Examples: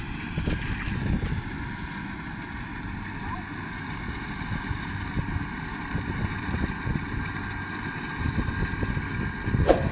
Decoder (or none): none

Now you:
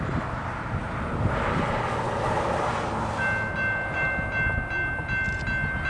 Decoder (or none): none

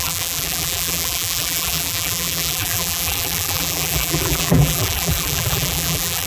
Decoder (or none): vocoder, BigVGAN v2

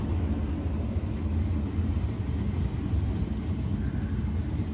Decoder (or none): none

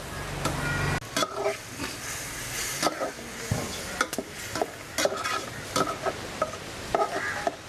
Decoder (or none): none